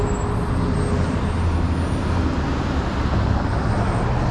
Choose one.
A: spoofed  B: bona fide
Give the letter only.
B